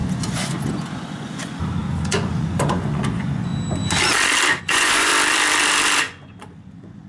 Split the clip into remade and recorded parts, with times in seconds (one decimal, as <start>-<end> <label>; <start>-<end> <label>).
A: 0.0-3.5 remade; 3.5-4.6 recorded; 4.6-5.1 remade; 5.1-6.0 recorded; 6.0-7.1 remade